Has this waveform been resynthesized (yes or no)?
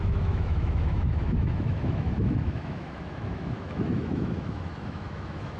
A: yes